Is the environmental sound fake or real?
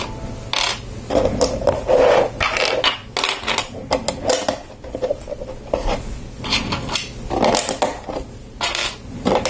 real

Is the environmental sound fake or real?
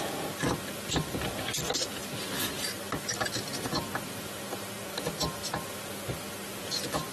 real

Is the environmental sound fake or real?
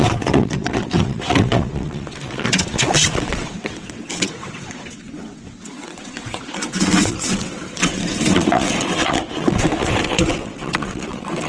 fake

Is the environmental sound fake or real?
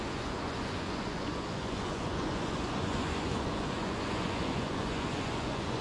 fake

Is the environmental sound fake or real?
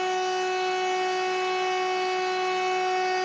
real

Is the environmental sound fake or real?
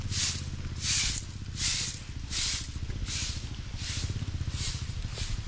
real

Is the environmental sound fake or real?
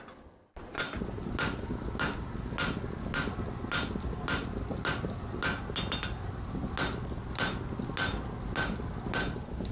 real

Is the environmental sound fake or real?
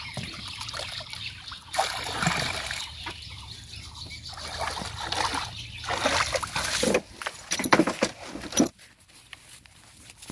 real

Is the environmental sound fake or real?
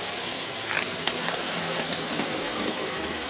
fake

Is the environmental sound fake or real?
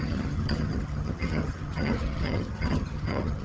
fake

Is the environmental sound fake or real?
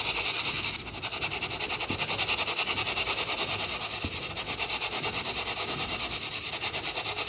real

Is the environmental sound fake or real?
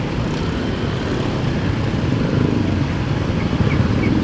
real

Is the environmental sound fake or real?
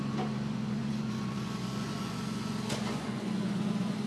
fake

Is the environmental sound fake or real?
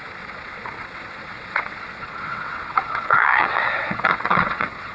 fake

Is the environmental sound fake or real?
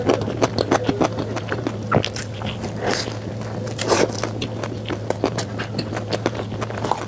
real